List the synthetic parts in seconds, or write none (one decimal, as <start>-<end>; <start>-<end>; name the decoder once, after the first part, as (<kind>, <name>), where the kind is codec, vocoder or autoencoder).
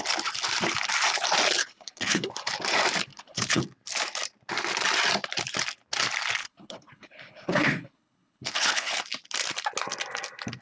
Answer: 1.6-2.3 (codec, HILCodec); 3.1-3.6; 6.4-9.0